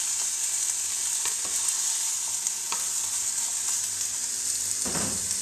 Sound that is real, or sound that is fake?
real